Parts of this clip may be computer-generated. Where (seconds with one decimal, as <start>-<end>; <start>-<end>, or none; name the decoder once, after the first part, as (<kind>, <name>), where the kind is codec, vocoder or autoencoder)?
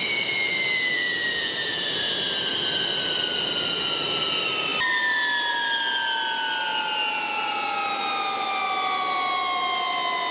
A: none